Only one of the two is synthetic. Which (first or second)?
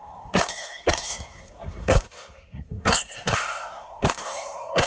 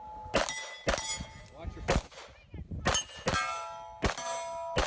first